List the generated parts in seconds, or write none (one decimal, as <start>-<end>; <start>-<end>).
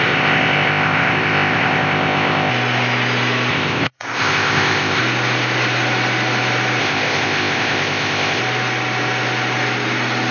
0.0-2.5; 3.5-5.0; 6.8-8.4